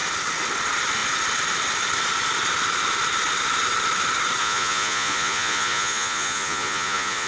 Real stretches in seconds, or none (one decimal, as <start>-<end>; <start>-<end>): 0.0-4.4